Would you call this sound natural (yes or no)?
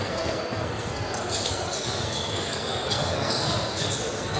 no